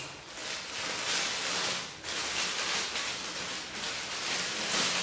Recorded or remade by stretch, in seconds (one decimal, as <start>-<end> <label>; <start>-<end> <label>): 0.0-5.0 recorded